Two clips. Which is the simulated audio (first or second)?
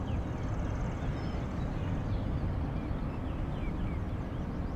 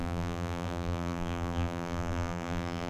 second